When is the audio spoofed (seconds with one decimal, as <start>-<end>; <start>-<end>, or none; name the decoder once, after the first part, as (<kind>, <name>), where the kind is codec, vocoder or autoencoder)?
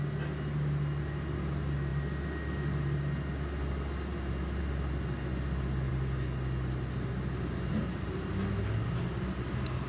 none